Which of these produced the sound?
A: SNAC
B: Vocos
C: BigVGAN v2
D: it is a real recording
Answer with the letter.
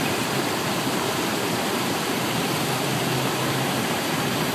C